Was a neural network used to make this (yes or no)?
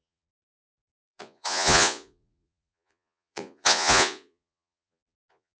yes